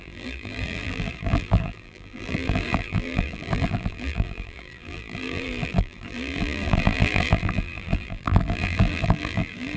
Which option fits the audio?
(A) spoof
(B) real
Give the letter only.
A